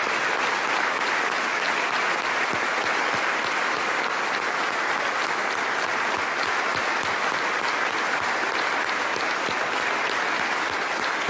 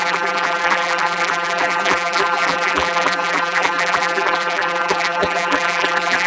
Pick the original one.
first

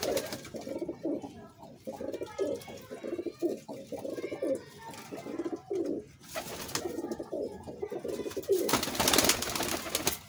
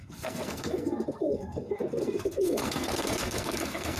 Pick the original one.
first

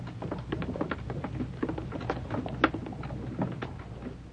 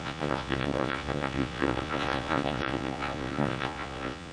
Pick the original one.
first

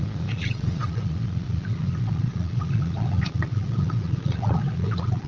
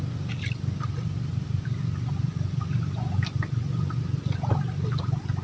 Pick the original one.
second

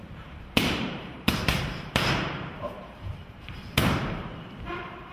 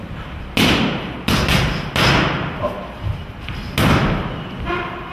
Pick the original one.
second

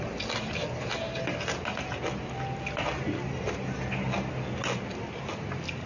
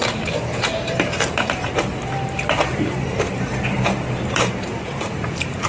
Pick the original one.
first